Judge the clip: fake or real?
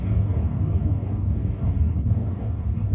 fake